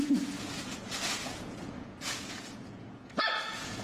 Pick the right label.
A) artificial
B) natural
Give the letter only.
A